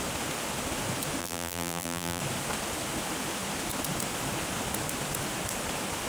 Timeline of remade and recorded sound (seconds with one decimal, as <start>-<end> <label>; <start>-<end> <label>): 0.0-1.2 recorded; 1.2-2.2 remade; 2.2-6.1 recorded